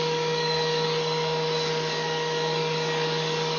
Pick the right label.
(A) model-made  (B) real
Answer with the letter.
A